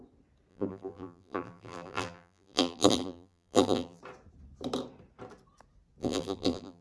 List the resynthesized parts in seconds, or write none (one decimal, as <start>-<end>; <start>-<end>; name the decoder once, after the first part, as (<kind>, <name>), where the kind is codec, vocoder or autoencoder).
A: 0.5-4.0 (vocoder, BigVGAN v2); 6.0-6.8